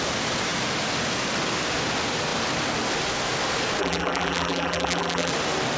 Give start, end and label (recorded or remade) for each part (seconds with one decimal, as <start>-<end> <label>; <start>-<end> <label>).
0.0-3.8 recorded; 3.8-5.3 remade; 5.3-5.8 recorded

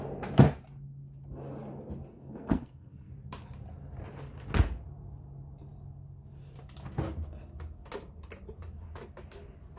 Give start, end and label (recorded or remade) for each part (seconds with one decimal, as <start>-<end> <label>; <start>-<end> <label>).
0.0-2.1 recorded; 2.1-3.1 remade; 3.1-9.8 recorded

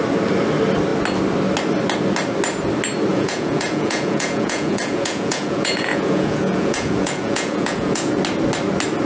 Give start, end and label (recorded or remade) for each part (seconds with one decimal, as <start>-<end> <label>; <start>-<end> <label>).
0.0-3.1 recorded; 3.1-8.2 remade; 8.2-9.1 recorded

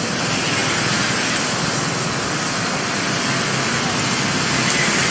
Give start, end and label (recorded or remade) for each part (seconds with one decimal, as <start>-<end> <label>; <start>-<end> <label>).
0.0-5.1 recorded

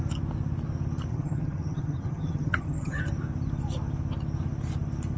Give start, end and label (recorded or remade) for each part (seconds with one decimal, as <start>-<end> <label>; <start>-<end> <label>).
0.0-1.1 recorded; 1.1-3.0 remade; 3.0-5.2 recorded

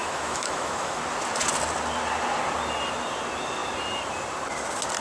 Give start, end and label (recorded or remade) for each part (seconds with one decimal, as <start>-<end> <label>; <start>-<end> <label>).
0.0-1.0 remade; 1.0-5.0 recorded